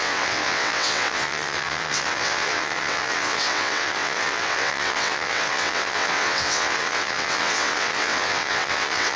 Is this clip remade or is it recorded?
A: remade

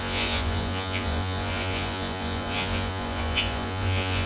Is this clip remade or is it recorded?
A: remade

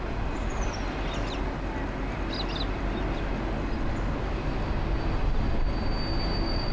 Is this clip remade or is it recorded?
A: recorded